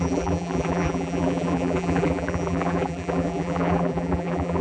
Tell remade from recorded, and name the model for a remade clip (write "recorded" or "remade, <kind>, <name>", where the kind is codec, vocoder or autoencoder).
remade, vocoder, BigVGAN v2